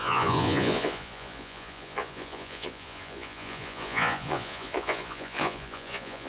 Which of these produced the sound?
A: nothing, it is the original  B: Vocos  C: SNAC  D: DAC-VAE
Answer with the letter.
B